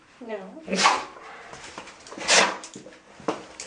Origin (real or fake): fake